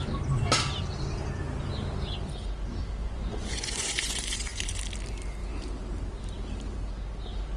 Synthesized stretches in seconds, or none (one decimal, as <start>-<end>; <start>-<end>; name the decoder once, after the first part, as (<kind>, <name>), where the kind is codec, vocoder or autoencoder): 3.0-4.8 (vocoder, Vocos)